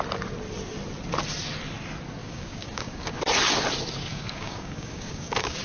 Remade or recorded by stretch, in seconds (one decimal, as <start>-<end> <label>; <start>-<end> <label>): 0.0-2.2 recorded; 2.2-3.2 remade; 3.2-4.1 recorded; 4.1-5.6 remade